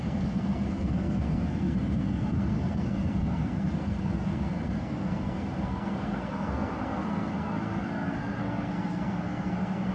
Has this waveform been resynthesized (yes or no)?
yes